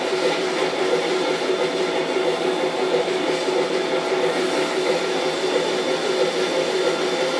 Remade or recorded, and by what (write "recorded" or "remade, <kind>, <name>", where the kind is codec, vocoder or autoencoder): recorded